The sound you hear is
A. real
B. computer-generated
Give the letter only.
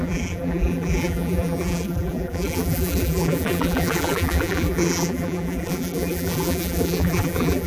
B